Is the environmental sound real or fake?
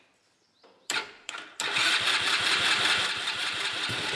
fake